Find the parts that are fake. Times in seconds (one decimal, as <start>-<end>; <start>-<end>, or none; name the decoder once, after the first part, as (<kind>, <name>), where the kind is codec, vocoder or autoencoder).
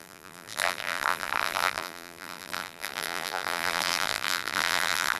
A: 0.0-5.2 (vocoder, BigVGAN v2)